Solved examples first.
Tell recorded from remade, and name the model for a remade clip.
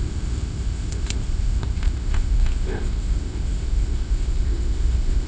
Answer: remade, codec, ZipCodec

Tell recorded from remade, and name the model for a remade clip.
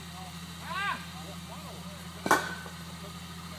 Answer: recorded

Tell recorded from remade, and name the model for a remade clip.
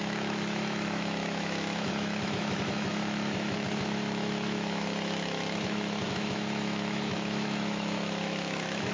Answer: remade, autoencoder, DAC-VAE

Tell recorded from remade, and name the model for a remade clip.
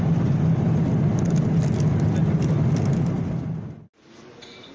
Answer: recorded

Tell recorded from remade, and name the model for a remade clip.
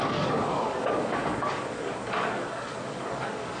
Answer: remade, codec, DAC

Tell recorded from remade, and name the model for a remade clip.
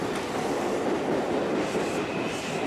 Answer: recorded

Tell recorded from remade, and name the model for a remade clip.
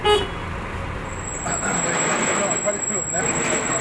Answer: recorded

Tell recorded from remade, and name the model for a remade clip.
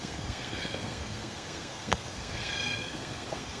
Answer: remade, codec, SNAC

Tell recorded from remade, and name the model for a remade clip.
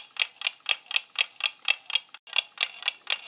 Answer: recorded